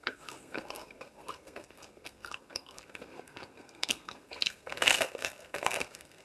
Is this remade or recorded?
remade